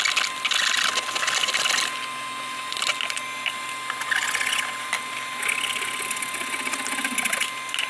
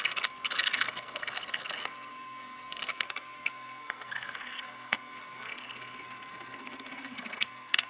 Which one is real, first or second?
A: first